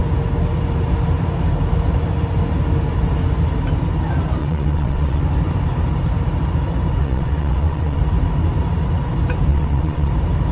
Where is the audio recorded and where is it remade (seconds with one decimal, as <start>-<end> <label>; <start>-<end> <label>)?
0.0-4.4 recorded; 4.4-5.2 remade; 5.2-7.0 recorded; 7.0-8.0 remade; 8.0-9.5 recorded; 9.5-10.1 remade; 10.1-10.5 recorded